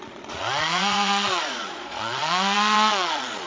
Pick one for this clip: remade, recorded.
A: remade